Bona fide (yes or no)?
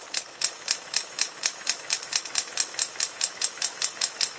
no